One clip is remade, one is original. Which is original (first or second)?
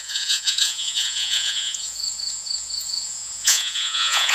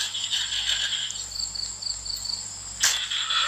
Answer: second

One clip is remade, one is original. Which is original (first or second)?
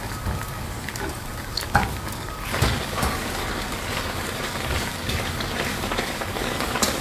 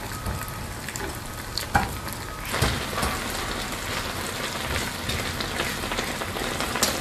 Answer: second